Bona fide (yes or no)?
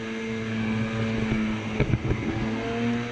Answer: yes